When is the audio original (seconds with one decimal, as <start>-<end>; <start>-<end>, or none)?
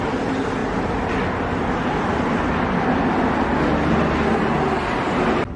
0.0-5.6